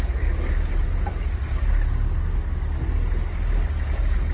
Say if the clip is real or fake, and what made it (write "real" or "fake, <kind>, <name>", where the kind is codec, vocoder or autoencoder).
real